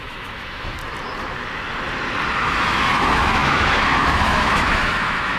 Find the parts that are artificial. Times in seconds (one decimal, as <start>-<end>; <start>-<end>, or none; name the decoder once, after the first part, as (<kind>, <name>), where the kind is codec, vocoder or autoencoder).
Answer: 0.0-0.8 (autoencoder, DAC-VAE); 2.5-5.4